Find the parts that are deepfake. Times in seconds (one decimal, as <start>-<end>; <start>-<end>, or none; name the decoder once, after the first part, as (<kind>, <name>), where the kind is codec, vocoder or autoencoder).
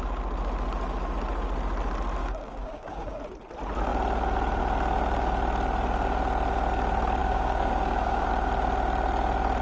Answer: 2.2-3.2 (codec, DAC); 7.2-8.3